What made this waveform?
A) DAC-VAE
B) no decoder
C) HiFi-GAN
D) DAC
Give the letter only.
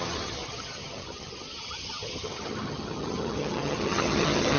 C